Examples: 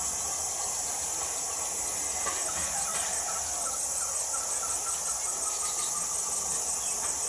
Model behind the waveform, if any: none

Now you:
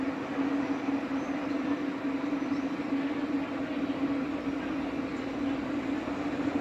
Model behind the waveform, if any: none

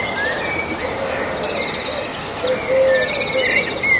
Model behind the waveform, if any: none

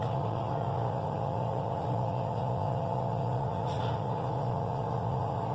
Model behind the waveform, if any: vocoder, Vocos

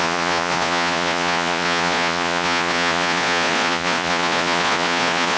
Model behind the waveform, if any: vocoder, Vocos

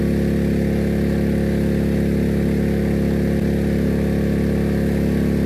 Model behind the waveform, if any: none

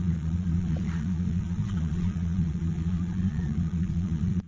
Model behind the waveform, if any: vocoder, Vocos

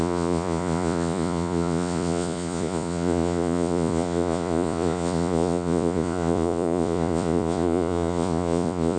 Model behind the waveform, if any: vocoder, Vocos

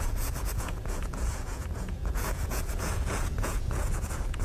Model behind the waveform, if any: vocoder, Vocos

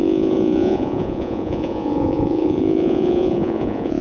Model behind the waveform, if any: vocoder, Vocos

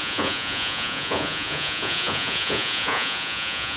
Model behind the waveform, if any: vocoder, Vocos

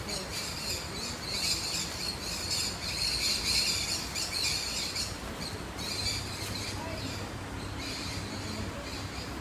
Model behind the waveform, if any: none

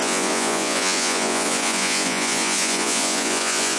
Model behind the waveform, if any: vocoder, Vocos